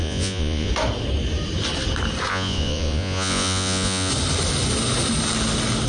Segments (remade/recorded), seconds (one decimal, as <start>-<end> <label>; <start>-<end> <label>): 0.0-0.7 remade; 0.7-2.3 recorded; 2.3-4.1 remade; 4.1-5.9 recorded